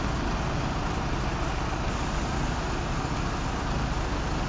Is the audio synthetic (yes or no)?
no